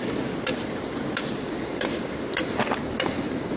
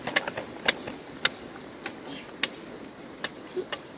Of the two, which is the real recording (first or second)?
second